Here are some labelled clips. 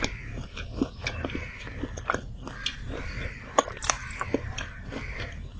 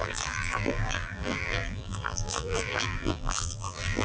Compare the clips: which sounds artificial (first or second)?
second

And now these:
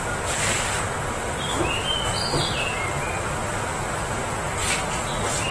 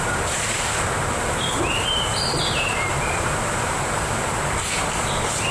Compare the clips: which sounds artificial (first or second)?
second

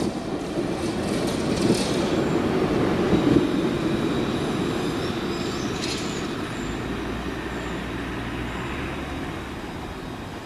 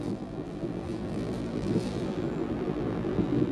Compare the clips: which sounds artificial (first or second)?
second